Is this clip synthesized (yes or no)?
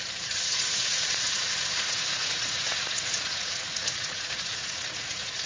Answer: yes